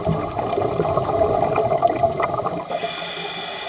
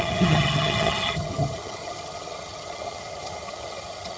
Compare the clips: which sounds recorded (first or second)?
first